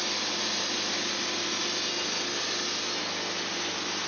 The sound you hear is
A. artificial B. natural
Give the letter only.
B